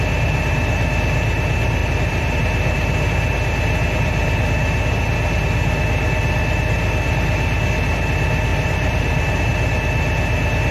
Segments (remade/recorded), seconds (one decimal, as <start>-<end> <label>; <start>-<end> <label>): 0.0-1.8 recorded; 1.8-2.4 remade; 2.4-8.5 recorded; 8.5-9.4 remade; 9.4-10.7 recorded